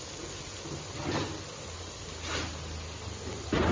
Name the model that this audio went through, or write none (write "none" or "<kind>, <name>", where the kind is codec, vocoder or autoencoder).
none